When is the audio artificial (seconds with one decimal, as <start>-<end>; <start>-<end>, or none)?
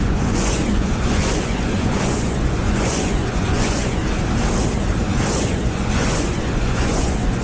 0.0-4.0; 5.3-7.4